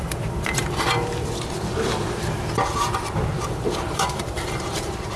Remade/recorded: remade